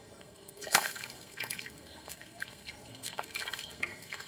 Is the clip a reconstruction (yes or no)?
yes